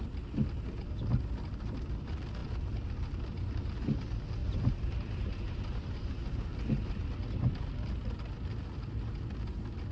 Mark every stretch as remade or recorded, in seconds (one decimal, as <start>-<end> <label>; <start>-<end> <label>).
0.0-4.4 recorded; 4.4-6.1 remade; 6.1-9.9 recorded